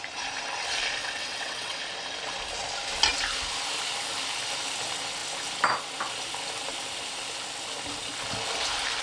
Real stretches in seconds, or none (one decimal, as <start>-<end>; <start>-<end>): 0.0-1.0; 1.8-9.0